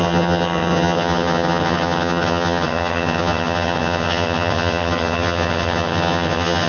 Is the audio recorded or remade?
remade